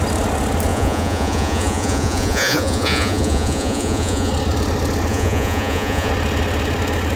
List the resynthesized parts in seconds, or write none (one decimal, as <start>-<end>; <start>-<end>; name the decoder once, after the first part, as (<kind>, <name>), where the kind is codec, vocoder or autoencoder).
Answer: 0.7-4.3 (vocoder, Vocos); 5.1-6.1

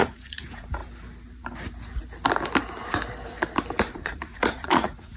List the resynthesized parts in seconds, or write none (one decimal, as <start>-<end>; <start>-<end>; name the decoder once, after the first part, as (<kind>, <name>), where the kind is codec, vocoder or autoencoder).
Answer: 0.0-0.8 (vocoder, Vocos); 3.9-5.2

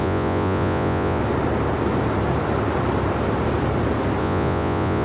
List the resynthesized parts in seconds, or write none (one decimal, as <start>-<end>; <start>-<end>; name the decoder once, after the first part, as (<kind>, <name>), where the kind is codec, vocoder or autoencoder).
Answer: 0.0-1.2 (vocoder, Vocos); 4.2-5.0

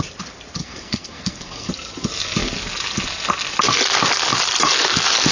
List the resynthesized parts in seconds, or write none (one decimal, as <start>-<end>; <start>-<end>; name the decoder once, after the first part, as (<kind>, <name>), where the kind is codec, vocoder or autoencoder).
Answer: 0.6-1.7 (codec, SNAC)

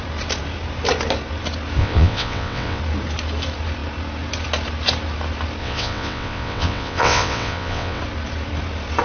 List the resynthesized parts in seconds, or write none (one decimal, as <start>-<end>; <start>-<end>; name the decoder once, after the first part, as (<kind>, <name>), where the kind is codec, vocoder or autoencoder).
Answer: 1.8-2.8 (vocoder, WaveNeXt); 5.6-8.0